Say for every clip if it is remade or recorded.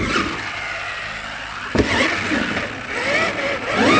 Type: recorded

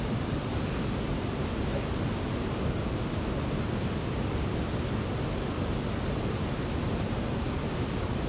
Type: recorded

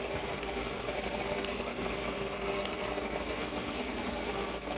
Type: remade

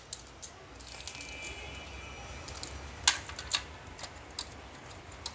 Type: recorded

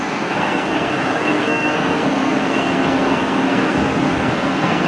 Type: remade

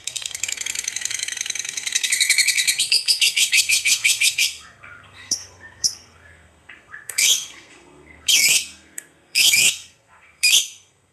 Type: remade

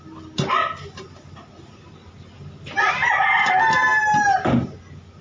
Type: recorded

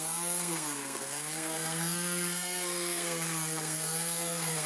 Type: remade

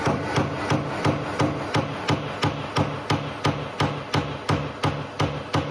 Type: recorded